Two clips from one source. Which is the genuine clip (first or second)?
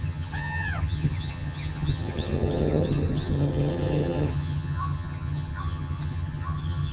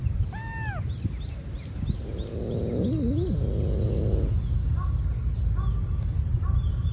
second